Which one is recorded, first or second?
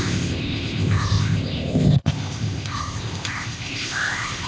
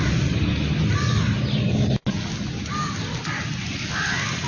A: second